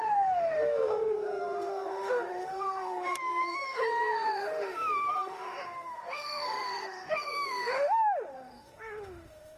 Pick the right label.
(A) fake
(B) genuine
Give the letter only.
A